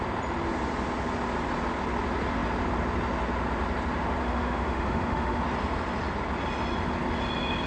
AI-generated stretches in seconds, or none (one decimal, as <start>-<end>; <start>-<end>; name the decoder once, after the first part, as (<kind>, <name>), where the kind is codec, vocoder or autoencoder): 4.2-5.4 (autoencoder, DAC-VAE)